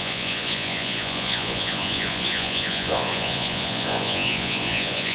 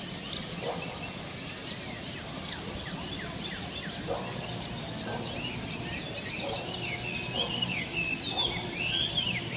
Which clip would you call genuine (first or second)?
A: second